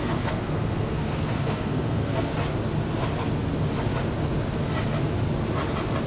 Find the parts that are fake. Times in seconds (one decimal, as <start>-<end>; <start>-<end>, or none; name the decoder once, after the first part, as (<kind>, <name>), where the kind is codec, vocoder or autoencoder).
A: 0.0-2.3 (codec, SNAC)